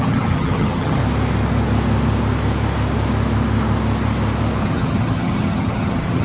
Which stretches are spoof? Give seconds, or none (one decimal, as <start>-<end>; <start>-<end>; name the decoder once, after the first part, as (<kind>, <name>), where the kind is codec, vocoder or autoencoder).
0.0-1.0 (vocoder, HiFi-GAN); 4.6-6.2